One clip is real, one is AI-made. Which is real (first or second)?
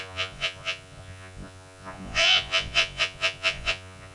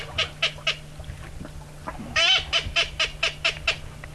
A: second